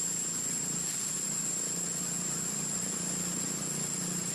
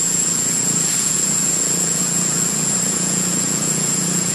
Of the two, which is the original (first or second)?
first